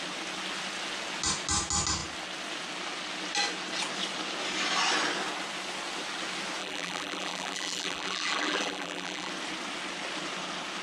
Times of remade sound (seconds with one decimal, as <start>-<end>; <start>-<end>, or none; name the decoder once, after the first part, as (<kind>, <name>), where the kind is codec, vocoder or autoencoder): 6.6-9.3 (vocoder, BigVGAN v2)

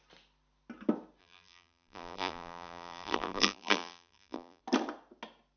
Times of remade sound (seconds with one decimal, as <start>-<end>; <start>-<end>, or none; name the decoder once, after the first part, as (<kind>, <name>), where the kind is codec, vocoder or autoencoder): 1.2-4.6 (vocoder, BigVGAN v2)

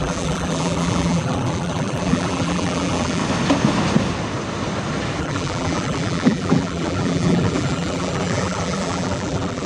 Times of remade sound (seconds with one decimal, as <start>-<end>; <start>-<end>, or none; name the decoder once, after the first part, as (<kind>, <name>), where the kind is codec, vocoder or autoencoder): 0.0-3.2 (vocoder, BigVGAN v2); 5.2-9.7

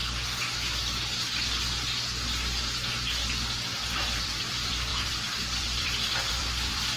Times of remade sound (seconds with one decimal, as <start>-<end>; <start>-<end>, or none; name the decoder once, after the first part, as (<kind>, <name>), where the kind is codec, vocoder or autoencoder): 4.2-7.0 (vocoder, BigVGAN v2)

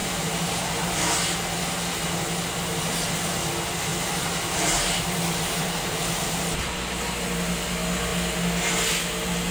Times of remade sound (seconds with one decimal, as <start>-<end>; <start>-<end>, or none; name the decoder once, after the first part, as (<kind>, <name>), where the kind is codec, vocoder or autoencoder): 0.0-1.1 (vocoder, BigVGAN v2); 3.9-6.4

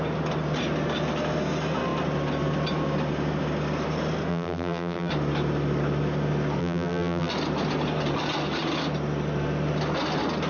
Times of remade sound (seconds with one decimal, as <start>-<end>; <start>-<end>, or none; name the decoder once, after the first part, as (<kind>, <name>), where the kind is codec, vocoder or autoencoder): 4.3-5.1 (vocoder, BigVGAN v2); 6.6-7.3

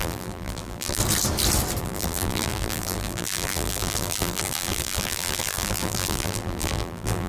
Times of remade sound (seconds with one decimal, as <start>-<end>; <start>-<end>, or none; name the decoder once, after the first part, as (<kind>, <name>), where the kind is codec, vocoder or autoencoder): 0.0-1.0 (vocoder, BigVGAN v2); 1.8-7.3

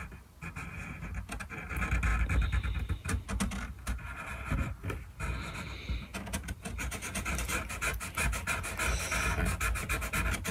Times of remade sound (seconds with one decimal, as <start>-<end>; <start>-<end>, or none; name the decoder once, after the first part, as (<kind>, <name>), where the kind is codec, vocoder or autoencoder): none